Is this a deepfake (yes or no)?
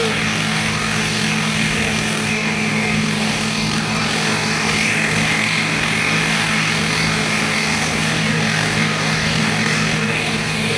yes